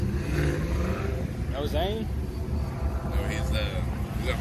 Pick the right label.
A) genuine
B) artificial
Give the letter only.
A